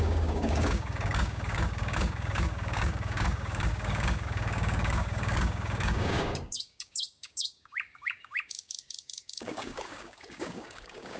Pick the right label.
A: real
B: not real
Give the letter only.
B